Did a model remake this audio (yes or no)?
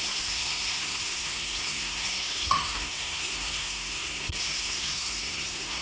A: yes